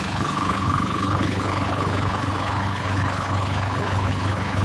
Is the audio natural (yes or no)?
no